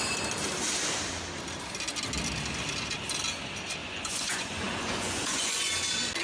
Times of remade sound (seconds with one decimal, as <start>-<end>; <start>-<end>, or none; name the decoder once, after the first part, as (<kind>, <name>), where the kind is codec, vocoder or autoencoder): 3.8-5.7 (vocoder, Vocos)